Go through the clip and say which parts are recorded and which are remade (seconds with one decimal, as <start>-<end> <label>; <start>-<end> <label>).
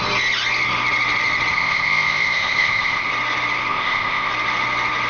0.0-1.5 recorded; 1.5-3.1 remade; 3.1-3.7 recorded; 3.7-4.3 remade; 4.3-5.1 recorded